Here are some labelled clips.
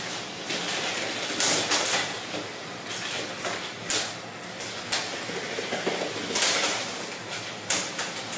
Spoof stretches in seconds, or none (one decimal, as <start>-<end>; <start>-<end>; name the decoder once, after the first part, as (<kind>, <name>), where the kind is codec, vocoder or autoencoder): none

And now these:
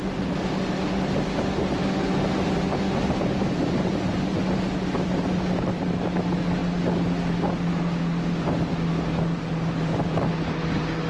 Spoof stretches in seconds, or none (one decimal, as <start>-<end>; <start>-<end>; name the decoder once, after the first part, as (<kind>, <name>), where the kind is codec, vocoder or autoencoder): none

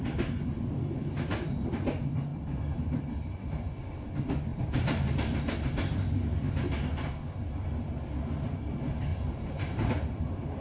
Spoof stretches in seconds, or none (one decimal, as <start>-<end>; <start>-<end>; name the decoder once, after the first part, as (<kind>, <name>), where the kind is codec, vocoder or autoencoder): 2.3-3.3 (vocoder, BigVGAN v2); 4.5-5.1; 9.1-9.9

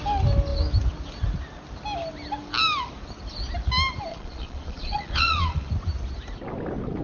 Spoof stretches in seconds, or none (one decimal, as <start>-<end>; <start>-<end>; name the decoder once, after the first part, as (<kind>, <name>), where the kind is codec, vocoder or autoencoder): 4.1-5.7 (vocoder, Vocos)

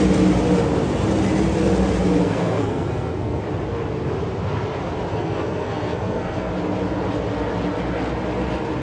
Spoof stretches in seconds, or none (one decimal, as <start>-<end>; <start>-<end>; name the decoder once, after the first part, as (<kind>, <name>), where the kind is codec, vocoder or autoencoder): 2.2-3.4 (codec, SNAC); 5.1-6.5

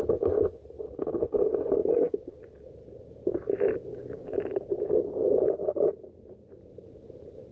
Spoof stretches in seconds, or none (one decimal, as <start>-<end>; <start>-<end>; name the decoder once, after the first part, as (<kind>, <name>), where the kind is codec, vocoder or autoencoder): 1.8-2.4 (codec, DAC); 3.9-4.7

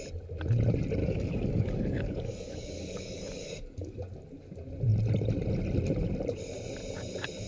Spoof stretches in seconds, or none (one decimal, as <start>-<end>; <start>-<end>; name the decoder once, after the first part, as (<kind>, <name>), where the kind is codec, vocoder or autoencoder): 1.0-4.0 (codec, DAC)

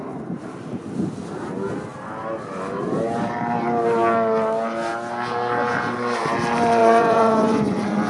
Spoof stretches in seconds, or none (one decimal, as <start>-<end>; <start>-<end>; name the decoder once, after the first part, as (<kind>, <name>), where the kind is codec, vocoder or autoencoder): 6.8-8.1 (vocoder, Vocos)